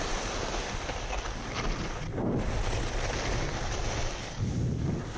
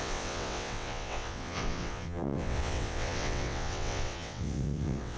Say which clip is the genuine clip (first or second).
first